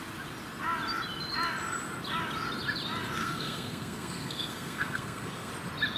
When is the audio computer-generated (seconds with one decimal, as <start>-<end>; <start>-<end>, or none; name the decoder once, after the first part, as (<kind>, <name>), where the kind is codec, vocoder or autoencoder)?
3.2-5.5 (codec, SNAC)